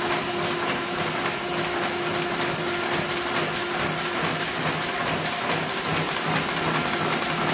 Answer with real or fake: real